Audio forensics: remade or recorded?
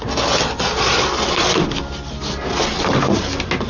recorded